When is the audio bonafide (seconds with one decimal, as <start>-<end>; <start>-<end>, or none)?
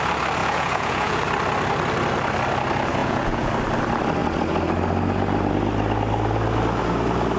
0.0-0.4; 1.2-3.0; 3.5-7.4